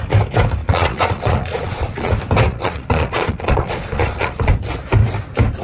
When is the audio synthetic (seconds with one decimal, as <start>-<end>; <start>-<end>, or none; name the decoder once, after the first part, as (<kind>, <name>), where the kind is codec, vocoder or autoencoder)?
0.6-2.1 (vocoder, Vocos); 2.5-4.5